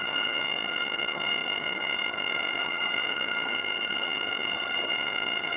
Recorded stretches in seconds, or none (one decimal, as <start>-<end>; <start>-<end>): none